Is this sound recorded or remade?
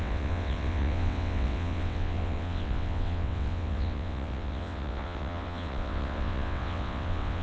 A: remade